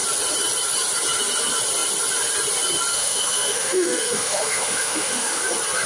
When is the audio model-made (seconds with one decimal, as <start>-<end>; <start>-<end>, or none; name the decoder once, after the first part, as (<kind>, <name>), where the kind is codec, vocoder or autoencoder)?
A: 2.9-5.4 (autoencoder, DAC-VAE)